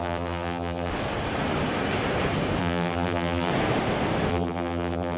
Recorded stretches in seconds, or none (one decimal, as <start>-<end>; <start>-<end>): 0.9-2.6; 3.5-4.3